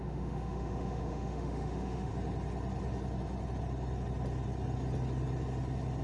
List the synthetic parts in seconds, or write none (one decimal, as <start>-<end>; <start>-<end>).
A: 0.0-2.1